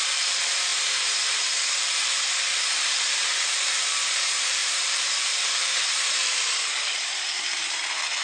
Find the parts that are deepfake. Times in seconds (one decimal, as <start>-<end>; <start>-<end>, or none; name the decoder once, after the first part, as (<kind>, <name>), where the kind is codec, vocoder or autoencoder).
0.0-8.2 (vocoder, BigVGAN v2)